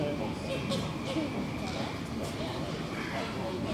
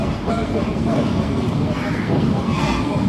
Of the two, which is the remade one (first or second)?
second